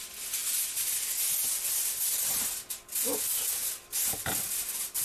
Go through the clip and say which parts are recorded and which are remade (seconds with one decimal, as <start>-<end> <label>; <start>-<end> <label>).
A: 0.0-5.0 recorded